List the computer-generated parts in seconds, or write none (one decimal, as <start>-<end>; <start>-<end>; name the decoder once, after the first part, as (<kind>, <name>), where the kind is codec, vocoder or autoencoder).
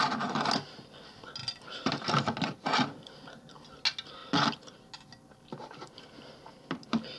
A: none